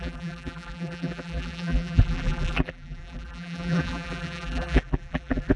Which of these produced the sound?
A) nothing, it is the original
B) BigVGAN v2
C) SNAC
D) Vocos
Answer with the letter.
B